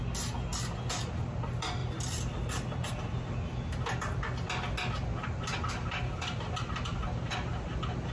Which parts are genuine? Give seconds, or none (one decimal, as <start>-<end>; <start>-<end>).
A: 0.0-8.1